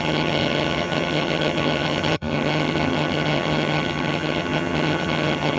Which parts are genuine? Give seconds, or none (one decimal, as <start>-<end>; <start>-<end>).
none